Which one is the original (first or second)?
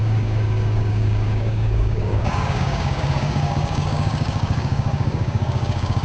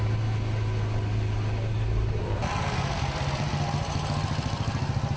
second